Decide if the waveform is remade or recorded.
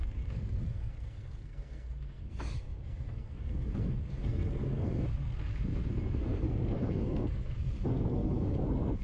remade